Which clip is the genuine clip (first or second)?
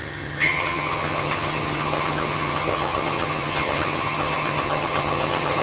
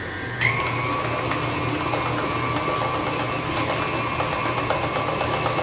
second